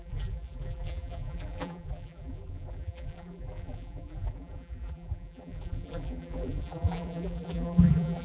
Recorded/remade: remade